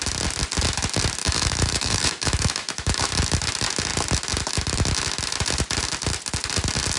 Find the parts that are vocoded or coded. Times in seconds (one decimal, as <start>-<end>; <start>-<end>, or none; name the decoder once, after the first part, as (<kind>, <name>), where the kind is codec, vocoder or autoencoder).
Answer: 1.2-3.1 (autoencoder, DAC-VAE)